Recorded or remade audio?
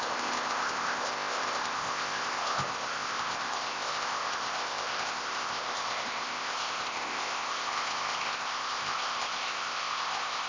remade